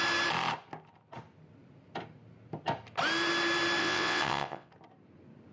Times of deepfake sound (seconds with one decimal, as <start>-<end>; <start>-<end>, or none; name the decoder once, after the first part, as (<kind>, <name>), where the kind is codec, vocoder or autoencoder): 3.8-4.7 (vocoder, WaveNeXt)

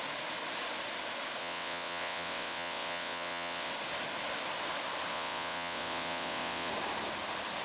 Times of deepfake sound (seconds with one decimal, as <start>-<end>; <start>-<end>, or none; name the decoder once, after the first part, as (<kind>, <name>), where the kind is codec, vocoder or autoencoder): 1.4-3.7 (vocoder, WaveNeXt); 5.1-6.7

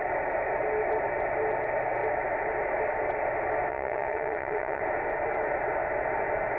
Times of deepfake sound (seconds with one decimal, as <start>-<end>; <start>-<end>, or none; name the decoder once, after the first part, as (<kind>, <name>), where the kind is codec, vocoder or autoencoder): 3.7-4.8 (vocoder, WaveNeXt)

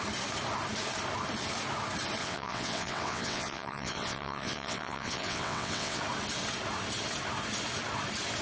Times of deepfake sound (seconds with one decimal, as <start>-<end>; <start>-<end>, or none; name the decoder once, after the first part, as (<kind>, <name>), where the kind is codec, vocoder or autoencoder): 2.2-6.0 (vocoder, WaveNeXt)